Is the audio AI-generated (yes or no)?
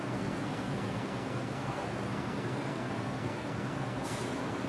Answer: yes